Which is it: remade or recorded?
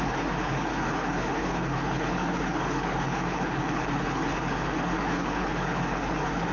remade